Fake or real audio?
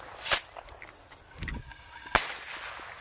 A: real